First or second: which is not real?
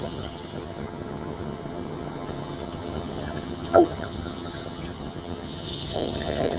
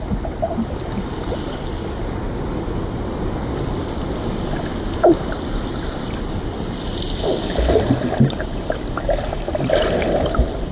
first